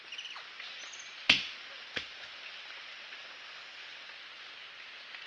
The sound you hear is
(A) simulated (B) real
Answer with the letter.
B